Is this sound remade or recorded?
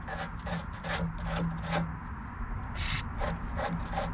recorded